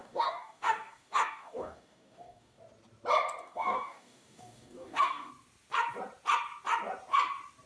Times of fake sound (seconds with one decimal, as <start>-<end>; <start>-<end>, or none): 0.0-2.6; 3.4-5.3